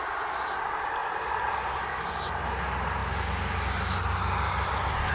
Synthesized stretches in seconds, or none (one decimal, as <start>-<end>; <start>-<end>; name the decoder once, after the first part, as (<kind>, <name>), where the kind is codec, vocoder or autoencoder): 1.0-2.1 (vocoder, BigVGAN v2)